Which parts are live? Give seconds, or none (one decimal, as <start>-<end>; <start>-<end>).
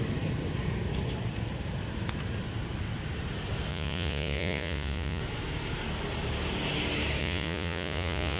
0.0-3.7; 5.2-7.2